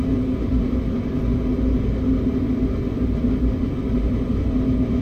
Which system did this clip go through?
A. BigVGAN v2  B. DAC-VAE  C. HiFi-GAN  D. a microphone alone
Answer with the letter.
D